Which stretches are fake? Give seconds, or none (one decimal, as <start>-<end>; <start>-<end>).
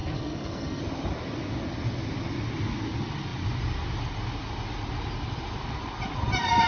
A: 0.0-0.8